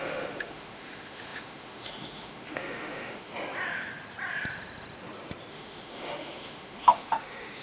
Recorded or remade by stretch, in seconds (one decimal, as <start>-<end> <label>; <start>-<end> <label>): 0.0-3.3 remade; 3.3-5.5 recorded; 5.5-7.6 remade